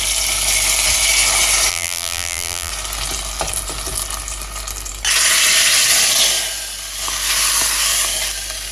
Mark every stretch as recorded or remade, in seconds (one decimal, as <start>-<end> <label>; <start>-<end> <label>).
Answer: 0.0-1.7 recorded; 1.7-2.7 remade; 2.7-8.7 recorded